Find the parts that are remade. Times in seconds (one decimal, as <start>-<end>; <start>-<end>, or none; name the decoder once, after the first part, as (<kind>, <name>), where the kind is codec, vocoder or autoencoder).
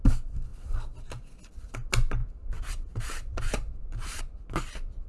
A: 2.2-4.2 (vocoder, BigVGAN v2)